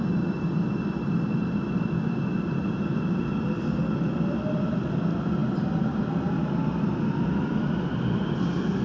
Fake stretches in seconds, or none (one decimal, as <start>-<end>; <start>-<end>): none